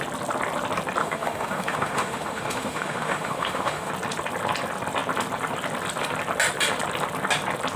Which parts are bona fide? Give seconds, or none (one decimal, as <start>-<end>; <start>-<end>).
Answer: 0.0-1.0; 3.9-7.8